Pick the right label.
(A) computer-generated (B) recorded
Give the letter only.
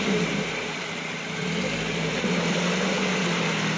A